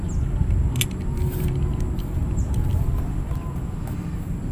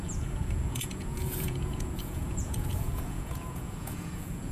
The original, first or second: first